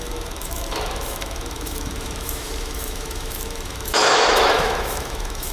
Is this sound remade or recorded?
remade